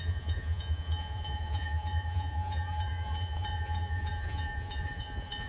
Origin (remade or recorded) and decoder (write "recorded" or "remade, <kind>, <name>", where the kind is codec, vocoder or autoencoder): remade, vocoder, Vocos